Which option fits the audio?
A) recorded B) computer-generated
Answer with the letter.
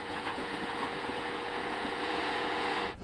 B